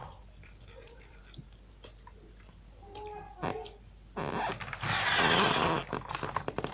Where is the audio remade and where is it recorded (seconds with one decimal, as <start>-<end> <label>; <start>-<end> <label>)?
0.0-1.2 remade; 1.2-6.7 recorded